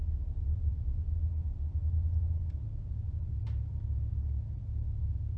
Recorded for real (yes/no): yes